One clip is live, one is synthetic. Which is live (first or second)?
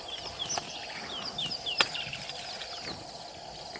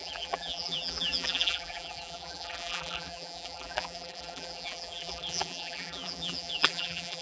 first